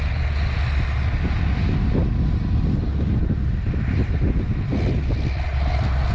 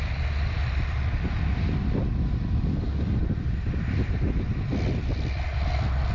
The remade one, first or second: second